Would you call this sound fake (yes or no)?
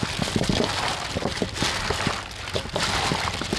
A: no